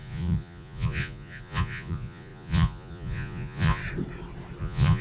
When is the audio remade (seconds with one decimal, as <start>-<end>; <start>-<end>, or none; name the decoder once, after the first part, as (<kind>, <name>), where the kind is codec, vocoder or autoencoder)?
0.0-3.8 (vocoder, Vocos); 4.6-5.0